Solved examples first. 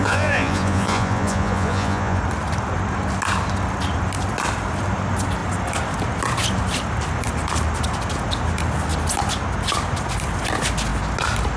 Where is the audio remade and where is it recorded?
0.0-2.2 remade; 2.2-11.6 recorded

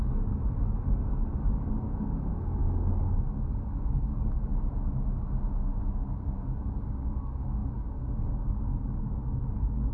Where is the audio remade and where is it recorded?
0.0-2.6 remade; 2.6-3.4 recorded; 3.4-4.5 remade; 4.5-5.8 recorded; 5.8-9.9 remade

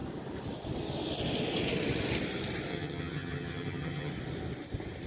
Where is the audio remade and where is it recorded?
0.0-2.7 recorded; 2.7-4.1 remade; 4.1-5.1 recorded

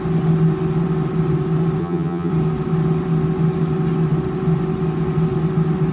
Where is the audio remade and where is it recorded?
0.0-1.8 recorded; 1.8-2.3 remade; 2.3-5.9 recorded

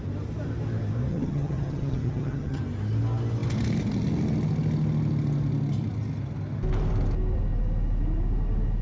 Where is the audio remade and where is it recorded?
0.0-1.1 recorded; 1.1-2.6 remade; 2.6-8.8 recorded

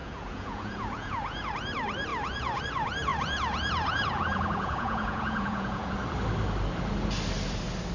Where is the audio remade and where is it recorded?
0.0-1.5 remade; 1.5-2.1 recorded; 2.1-2.6 remade; 2.6-3.1 recorded; 3.1-5.9 remade; 5.9-7.9 recorded

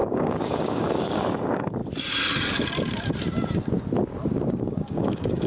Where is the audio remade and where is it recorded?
0.0-1.8 remade; 1.8-4.6 recorded; 4.6-5.5 remade